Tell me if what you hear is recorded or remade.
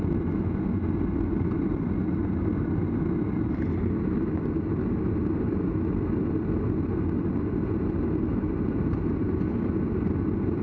recorded